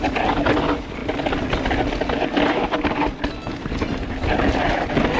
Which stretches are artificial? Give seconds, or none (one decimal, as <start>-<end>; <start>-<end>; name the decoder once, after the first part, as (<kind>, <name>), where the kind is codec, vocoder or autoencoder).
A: none